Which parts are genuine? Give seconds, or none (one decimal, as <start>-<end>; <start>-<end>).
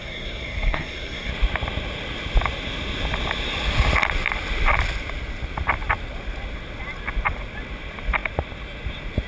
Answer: 1.3-9.3